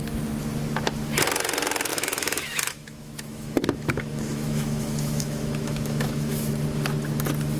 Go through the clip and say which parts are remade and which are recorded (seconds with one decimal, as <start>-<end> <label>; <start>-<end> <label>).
0.0-1.9 recorded; 1.9-6.5 remade; 6.5-7.6 recorded